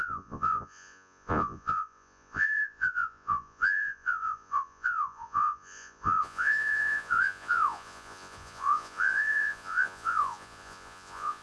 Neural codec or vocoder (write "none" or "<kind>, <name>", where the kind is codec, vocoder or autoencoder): vocoder, Vocos